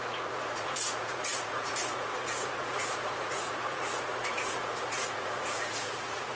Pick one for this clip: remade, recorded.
remade